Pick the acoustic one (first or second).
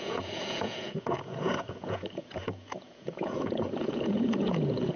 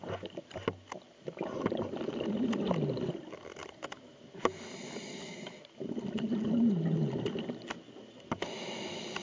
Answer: second